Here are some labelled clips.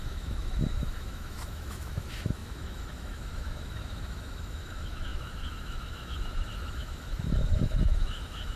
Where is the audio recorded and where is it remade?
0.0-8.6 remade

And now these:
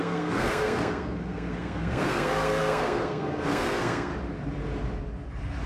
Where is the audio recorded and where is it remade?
0.0-4.1 remade; 4.1-5.7 recorded

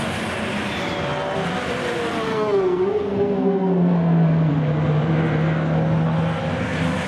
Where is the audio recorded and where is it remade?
0.0-2.3 recorded; 2.3-4.5 remade; 4.5-7.1 recorded

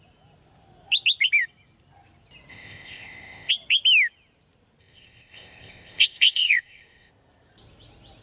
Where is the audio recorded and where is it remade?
0.0-2.5 recorded; 2.5-3.5 remade; 3.5-4.8 recorded; 4.8-7.1 remade; 7.1-8.2 recorded

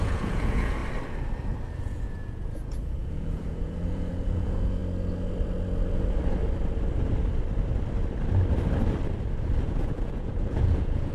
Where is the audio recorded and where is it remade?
0.0-0.8 remade; 0.8-1.8 recorded; 1.8-4.8 remade; 4.8-9.6 recorded; 9.6-11.1 remade

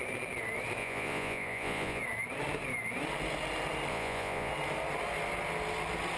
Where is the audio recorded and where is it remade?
0.0-0.8 recorded; 0.8-2.0 remade; 2.0-3.9 recorded; 3.9-4.5 remade; 4.5-6.2 recorded

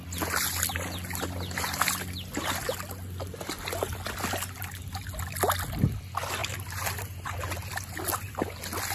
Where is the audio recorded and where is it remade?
0.0-8.9 recorded